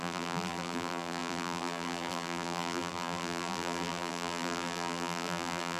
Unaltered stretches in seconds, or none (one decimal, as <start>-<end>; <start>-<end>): none